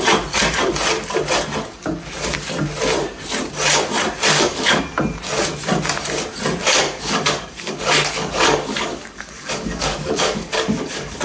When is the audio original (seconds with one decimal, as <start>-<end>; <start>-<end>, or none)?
0.0-4.3; 4.8-6.6